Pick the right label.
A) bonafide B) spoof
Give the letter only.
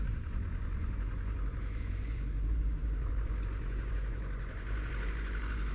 B